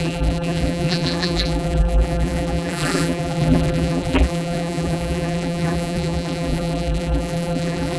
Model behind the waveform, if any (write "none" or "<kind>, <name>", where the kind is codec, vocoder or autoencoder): vocoder, BigVGAN v2